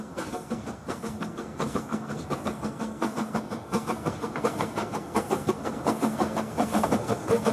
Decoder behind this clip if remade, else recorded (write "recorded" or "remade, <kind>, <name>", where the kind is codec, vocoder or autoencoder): remade, codec, SNAC